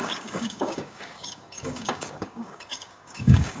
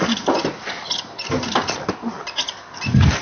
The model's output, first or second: first